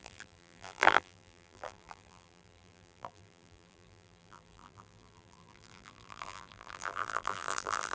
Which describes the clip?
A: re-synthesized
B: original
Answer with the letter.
A